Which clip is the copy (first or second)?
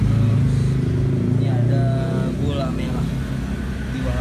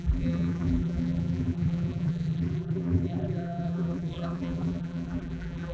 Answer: second